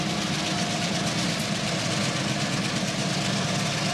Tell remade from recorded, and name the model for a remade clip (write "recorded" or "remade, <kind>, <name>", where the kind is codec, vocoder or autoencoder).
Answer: recorded